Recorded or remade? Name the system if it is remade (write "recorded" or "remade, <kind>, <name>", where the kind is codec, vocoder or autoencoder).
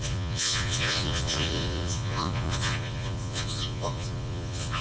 remade, vocoder, Vocos